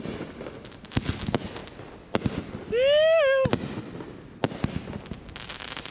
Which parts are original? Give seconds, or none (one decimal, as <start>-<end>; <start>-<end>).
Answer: 0.0-5.9